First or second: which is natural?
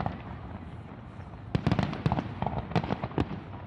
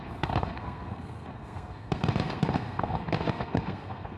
first